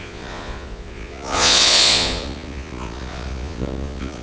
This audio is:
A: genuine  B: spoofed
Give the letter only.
B